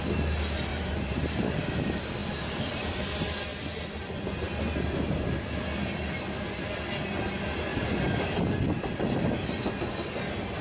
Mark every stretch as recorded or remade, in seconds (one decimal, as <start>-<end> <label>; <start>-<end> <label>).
0.0-0.7 recorded; 0.7-1.4 remade; 1.4-2.2 recorded; 2.2-2.9 remade; 2.9-10.6 recorded